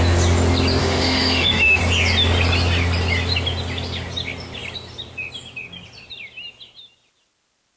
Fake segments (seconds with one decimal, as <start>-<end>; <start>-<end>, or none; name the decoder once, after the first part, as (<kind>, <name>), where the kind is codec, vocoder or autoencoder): 0.8-1.8 (autoencoder, DAC-VAE)